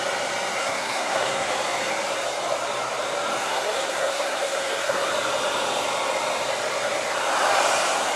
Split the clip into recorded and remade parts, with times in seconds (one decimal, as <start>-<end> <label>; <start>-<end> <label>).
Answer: 0.0-0.6 recorded; 0.6-1.5 remade; 1.5-3.4 recorded; 3.4-5.1 remade; 5.1-8.2 recorded